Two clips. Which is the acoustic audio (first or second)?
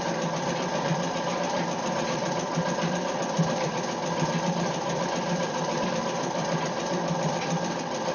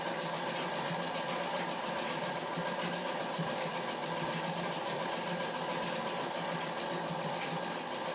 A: second